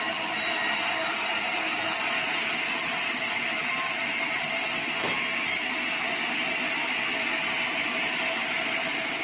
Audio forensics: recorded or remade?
recorded